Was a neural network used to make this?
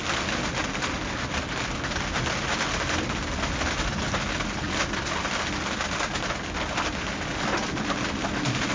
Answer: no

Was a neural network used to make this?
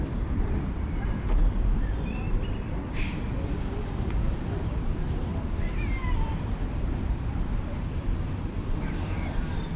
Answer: yes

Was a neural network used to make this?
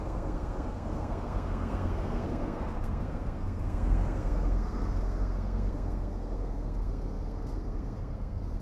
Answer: yes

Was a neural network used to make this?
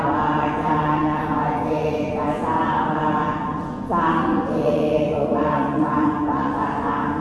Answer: yes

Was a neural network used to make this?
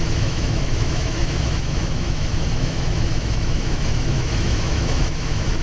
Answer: yes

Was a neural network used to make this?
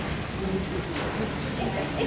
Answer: no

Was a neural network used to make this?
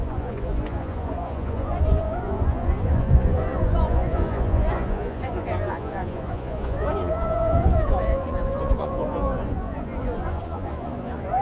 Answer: yes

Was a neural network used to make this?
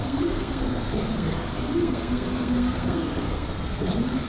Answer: yes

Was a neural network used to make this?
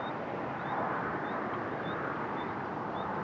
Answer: yes